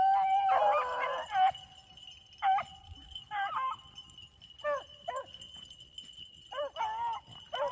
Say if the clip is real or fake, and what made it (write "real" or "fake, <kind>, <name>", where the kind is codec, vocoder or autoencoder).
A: real